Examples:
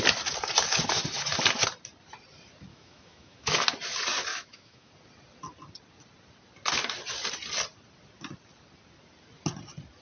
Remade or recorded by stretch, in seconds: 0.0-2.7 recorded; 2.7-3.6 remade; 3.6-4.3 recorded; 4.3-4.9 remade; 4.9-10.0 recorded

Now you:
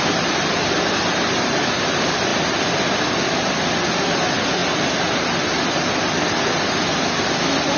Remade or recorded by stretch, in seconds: 0.0-7.8 recorded

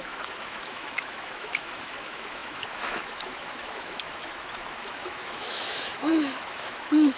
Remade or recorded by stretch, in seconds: 0.0-7.2 remade

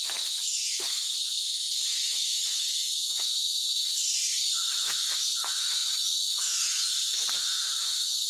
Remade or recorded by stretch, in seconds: 0.0-4.0 remade; 4.0-4.5 recorded; 4.5-8.3 remade

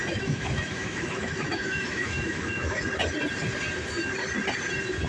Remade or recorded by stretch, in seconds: 0.0-2.9 remade; 2.9-5.1 recorded